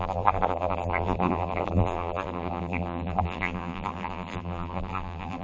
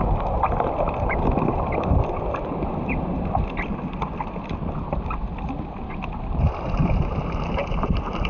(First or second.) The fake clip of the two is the first